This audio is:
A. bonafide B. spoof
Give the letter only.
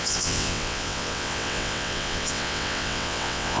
B